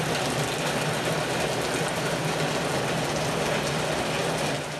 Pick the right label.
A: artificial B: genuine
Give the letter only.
B